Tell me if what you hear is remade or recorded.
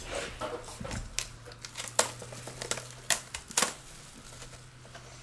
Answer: recorded